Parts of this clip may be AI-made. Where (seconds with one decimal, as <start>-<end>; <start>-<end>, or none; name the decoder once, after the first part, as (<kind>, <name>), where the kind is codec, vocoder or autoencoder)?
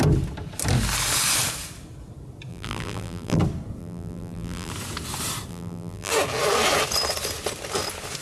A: 2.5-3.4 (vocoder, BigVGAN v2); 3.8-4.7; 5.5-6.1